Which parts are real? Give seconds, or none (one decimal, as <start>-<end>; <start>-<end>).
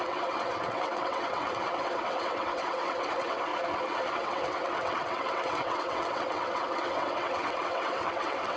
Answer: 3.5-4.1